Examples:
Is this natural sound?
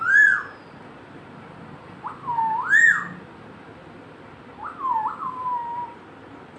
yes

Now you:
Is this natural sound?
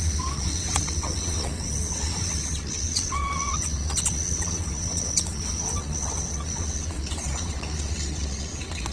no